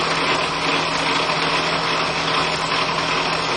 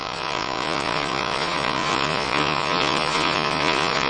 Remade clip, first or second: second